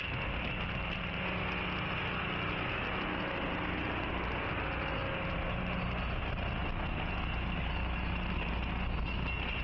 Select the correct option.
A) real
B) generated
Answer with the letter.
A